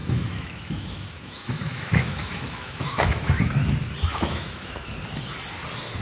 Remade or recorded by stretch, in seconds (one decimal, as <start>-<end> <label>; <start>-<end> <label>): 0.0-3.5 remade; 3.5-4.1 recorded; 4.1-4.9 remade; 4.9-6.0 recorded